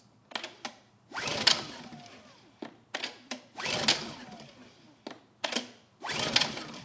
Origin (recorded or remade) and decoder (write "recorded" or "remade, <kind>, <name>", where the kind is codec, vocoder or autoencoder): recorded